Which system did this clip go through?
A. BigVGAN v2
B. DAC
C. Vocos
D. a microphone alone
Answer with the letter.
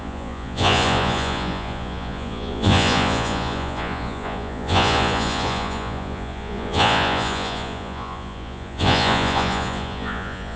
C